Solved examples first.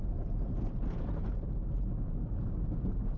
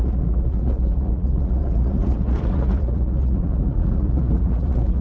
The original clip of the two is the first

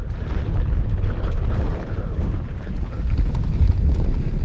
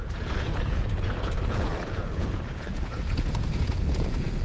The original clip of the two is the first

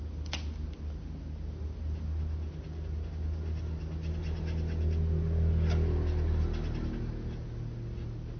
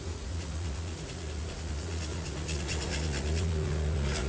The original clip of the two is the first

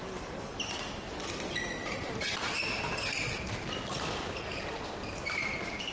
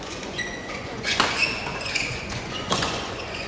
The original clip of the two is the first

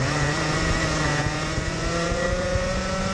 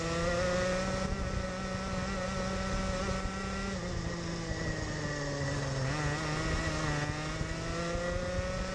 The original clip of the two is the second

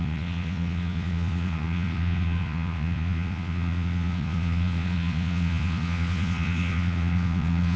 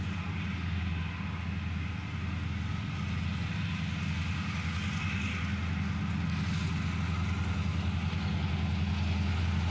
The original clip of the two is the second